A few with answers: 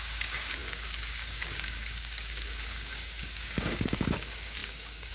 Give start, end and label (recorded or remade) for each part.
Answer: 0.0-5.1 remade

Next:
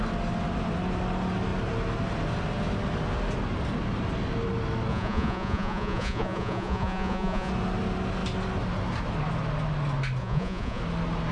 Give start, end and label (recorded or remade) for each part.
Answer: 0.0-4.9 recorded; 4.9-7.5 remade; 7.5-10.2 recorded; 10.2-10.8 remade; 10.8-11.3 recorded

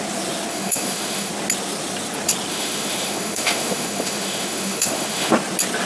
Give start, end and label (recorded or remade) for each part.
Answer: 0.0-0.5 recorded; 0.5-1.3 remade; 1.3-2.5 recorded; 2.5-5.3 remade; 5.3-5.9 recorded

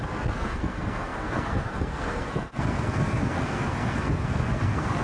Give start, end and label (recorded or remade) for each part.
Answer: 0.0-5.0 remade

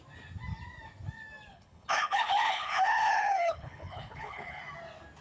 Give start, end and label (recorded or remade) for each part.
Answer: 0.0-1.5 recorded; 1.5-4.6 remade; 4.6-5.2 recorded

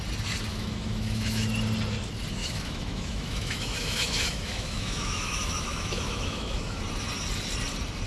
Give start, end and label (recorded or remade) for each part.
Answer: 0.0-0.5 recorded; 0.5-1.5 remade; 1.5-2.4 recorded; 2.4-6.8 remade; 6.8-8.1 recorded